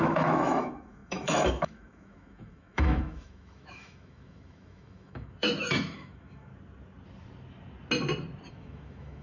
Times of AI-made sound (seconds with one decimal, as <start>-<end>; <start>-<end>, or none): 0.0-6.5; 8.5-9.2